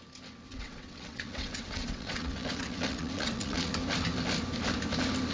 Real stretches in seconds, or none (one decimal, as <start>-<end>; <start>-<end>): 0.0-0.5; 3.7-5.3